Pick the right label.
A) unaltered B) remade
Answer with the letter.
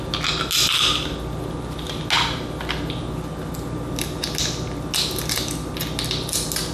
A